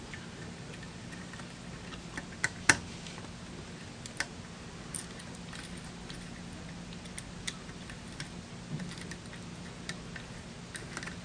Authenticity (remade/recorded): recorded